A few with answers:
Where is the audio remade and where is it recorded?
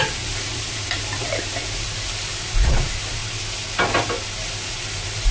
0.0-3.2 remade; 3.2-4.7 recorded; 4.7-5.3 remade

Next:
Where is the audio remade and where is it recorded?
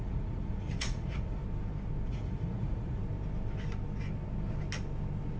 0.0-1.4 remade; 1.4-2.1 recorded; 2.1-3.0 remade; 3.0-5.4 recorded